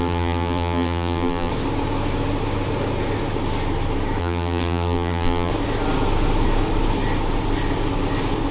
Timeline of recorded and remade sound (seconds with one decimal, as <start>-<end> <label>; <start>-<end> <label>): 0.0-1.5 remade; 1.5-4.2 recorded; 4.2-5.5 remade; 5.5-8.5 recorded